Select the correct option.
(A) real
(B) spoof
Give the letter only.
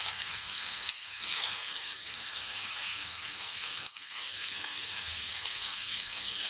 B